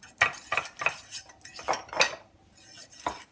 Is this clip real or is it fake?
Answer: real